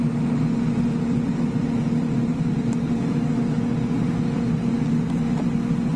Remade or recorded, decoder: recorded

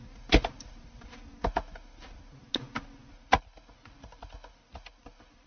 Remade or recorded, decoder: recorded